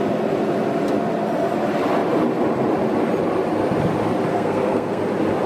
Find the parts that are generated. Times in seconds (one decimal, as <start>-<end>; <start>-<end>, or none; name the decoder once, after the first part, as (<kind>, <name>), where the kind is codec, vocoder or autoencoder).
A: 4.3-5.0 (codec, SNAC)